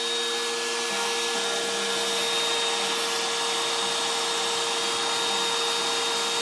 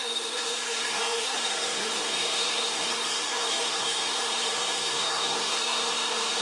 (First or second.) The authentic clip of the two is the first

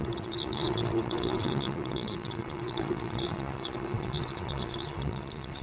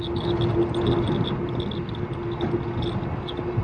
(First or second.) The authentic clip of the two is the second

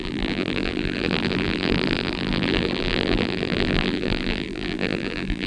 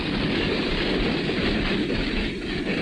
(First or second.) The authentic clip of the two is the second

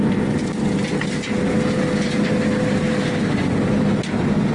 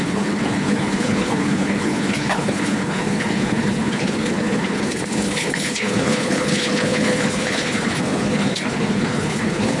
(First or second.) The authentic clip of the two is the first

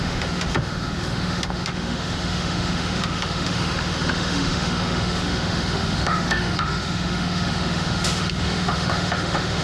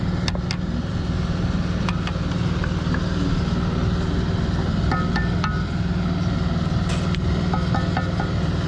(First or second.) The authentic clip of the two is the second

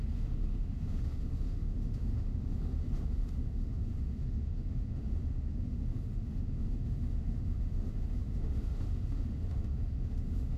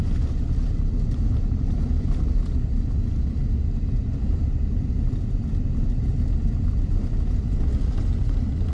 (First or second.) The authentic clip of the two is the second